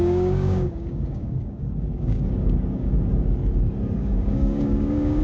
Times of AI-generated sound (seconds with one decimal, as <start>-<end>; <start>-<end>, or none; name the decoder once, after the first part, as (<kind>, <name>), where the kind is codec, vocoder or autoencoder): 0.0-3.1 (codec, DAC); 4.0-5.2